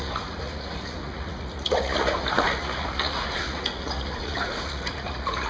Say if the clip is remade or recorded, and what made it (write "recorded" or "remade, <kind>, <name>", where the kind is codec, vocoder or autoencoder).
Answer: remade, vocoder, Vocos